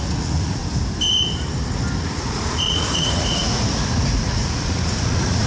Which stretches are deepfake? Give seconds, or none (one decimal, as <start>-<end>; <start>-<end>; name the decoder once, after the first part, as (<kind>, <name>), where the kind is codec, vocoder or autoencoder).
0.0-0.6 (vocoder, Vocos); 2.0-5.5